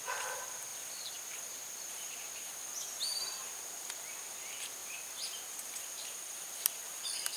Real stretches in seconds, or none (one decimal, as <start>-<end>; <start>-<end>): 0.0-0.7; 3.9-4.8